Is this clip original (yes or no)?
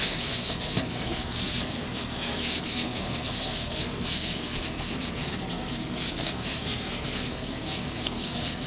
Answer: no